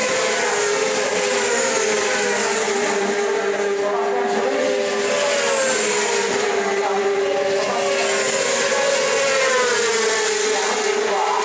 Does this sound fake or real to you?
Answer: real